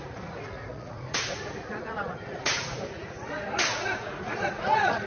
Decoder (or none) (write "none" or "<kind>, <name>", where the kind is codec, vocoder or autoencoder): vocoder, Vocos